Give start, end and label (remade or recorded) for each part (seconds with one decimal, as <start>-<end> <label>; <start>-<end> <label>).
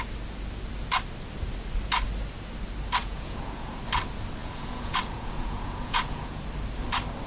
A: 0.0-3.0 recorded; 3.0-3.8 remade; 3.8-4.4 recorded; 4.4-6.4 remade; 6.4-7.3 recorded